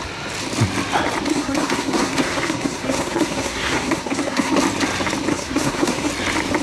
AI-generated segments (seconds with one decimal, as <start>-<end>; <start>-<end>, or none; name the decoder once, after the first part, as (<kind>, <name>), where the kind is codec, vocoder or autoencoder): 1.3-4.5 (codec, SNAC); 5.3-6.1